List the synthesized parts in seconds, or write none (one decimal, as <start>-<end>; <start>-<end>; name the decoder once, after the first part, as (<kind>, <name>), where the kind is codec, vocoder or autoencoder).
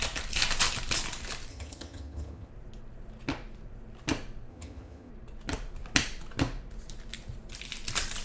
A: 1.5-2.5 (vocoder, HiFi-GAN); 4.5-5.1